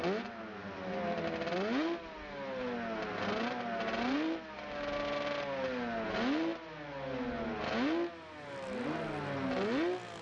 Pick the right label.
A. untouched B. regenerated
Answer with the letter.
A